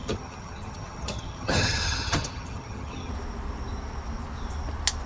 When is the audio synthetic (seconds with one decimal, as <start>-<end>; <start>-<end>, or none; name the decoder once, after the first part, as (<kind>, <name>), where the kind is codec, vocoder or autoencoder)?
0.0-3.1 (vocoder, HiFi-GAN)